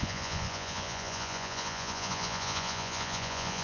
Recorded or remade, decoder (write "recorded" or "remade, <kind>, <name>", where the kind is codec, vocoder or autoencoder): remade, vocoder, Vocos